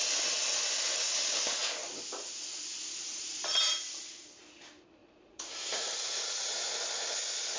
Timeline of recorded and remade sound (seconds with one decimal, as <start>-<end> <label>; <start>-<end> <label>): 0.0-5.0 recorded; 5.0-6.4 remade; 6.4-7.6 recorded